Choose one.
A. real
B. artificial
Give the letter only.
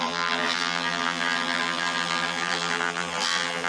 B